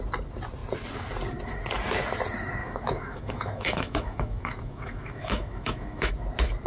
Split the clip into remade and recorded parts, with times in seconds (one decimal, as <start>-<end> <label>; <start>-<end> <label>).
0.0-2.6 recorded; 2.6-6.1 remade; 6.1-6.7 recorded